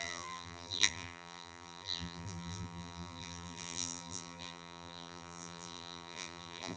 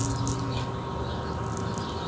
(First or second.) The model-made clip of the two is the first